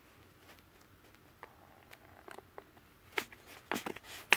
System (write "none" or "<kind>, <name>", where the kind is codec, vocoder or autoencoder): none